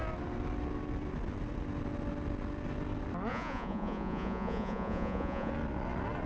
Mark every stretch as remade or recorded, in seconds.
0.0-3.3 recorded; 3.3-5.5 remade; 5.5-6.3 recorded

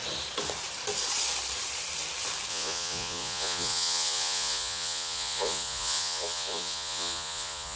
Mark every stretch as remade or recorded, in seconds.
0.0-2.5 recorded; 2.5-7.8 remade

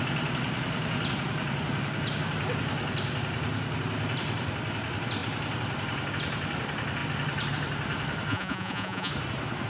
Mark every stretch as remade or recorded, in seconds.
0.0-8.3 recorded; 8.3-9.1 remade; 9.1-9.7 recorded

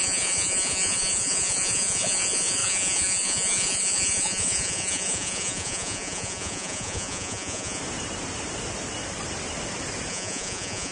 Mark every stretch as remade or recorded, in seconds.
0.0-7.8 remade; 7.8-10.1 recorded; 10.1-10.9 remade

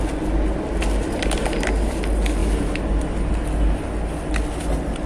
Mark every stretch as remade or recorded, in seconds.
0.0-5.1 recorded

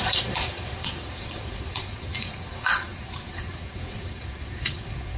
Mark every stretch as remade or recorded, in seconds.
0.0-5.2 remade